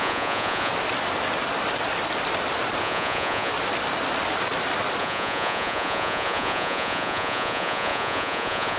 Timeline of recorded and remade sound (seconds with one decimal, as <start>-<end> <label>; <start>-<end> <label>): 0.0-0.7 remade; 0.7-2.8 recorded; 2.8-3.5 remade; 3.5-5.0 recorded; 5.0-8.8 remade

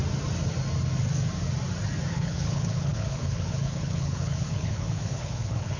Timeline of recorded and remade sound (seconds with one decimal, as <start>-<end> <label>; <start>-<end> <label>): 0.0-2.1 recorded; 2.1-5.8 remade